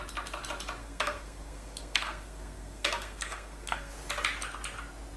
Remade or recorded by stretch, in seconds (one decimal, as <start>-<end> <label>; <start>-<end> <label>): 0.0-0.8 recorded; 0.8-3.9 remade; 3.9-5.2 recorded